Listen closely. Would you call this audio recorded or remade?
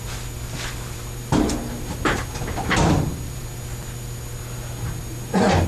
recorded